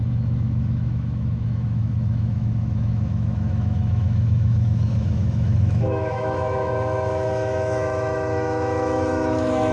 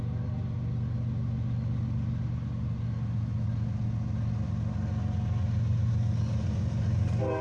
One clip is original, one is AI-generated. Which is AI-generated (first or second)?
first